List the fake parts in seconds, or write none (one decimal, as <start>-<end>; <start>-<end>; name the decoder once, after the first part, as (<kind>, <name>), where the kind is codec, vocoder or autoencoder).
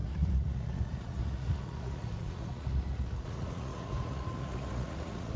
0.0-5.4 (vocoder, Vocos)